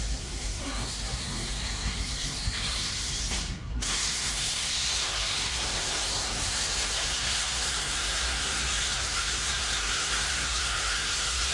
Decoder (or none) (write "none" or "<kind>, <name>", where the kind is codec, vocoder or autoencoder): codec, SNAC